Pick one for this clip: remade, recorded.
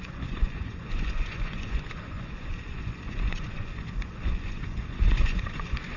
remade